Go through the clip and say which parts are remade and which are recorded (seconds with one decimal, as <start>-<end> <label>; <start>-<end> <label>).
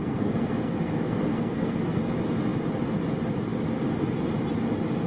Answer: 0.0-2.0 remade; 2.0-5.1 recorded